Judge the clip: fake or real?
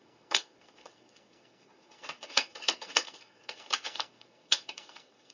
fake